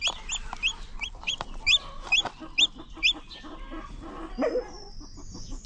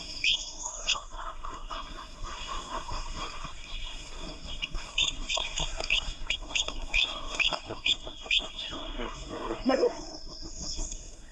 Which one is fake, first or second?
second